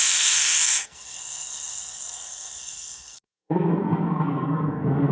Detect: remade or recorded remade